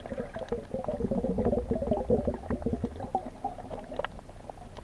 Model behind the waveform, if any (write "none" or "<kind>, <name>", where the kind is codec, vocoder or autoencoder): none